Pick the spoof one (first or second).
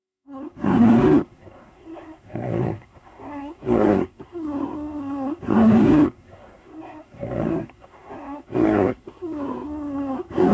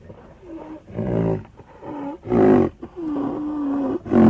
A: first